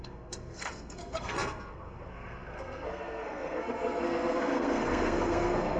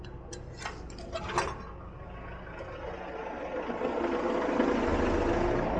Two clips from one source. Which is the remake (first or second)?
first